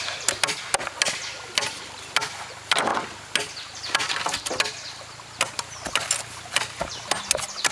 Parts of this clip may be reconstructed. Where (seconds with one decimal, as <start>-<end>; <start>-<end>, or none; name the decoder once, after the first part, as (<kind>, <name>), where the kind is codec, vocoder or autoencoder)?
none